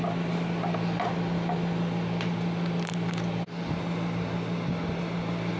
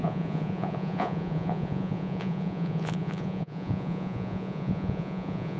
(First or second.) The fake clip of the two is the second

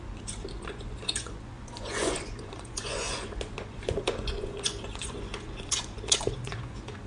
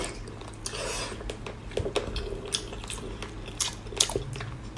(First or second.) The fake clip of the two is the first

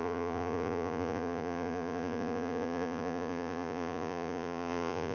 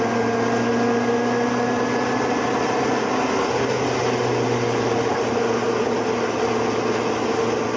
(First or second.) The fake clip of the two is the first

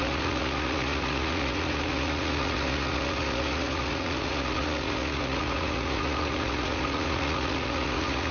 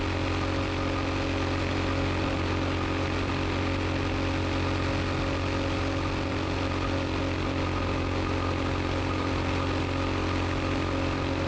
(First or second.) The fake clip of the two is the first